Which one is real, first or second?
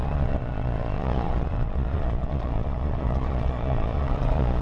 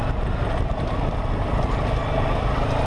second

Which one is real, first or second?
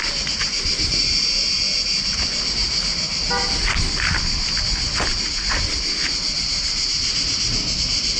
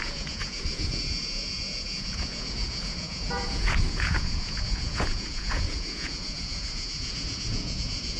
first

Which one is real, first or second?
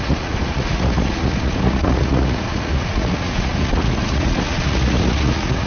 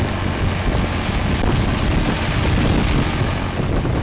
second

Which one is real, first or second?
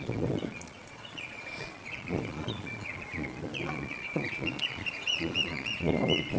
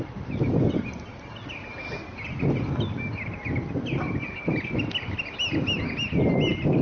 second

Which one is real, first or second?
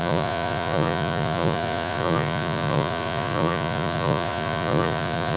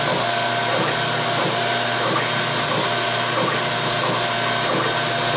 second